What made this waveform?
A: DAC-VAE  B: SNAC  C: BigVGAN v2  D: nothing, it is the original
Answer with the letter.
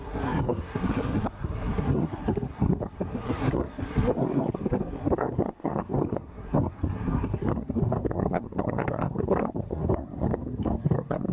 B